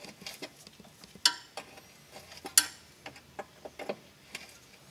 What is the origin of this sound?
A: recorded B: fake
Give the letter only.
A